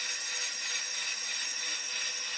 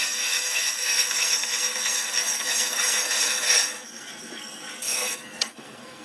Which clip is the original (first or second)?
first